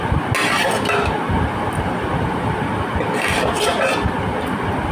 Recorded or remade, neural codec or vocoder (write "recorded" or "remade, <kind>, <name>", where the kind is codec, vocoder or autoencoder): recorded